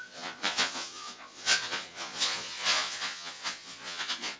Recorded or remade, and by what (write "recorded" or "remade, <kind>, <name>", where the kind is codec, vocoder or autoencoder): remade, vocoder, Vocos